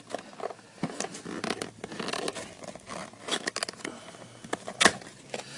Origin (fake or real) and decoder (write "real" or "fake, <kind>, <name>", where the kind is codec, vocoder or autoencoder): real